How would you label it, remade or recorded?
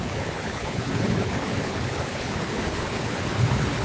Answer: remade